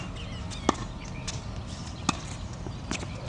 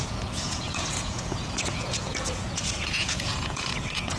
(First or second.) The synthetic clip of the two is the second